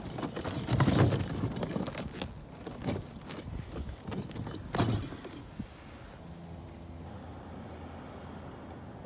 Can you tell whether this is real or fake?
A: real